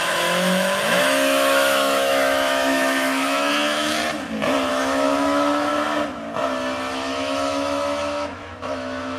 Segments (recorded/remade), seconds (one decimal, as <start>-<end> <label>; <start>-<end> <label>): 0.0-4.0 remade; 4.0-4.7 recorded; 4.7-5.7 remade; 5.7-6.9 recorded; 6.9-9.2 remade